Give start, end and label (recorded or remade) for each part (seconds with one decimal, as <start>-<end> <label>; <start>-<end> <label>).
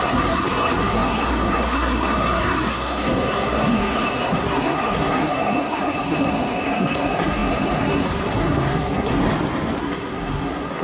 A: 0.0-9.2 remade; 9.2-9.8 recorded; 9.8-10.8 remade